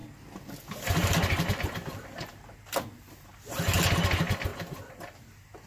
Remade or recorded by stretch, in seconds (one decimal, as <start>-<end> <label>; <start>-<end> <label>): 0.0-4.5 recorded; 4.5-5.3 remade; 5.3-5.7 recorded